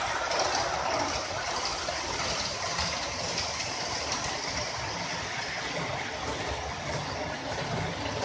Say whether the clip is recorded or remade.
recorded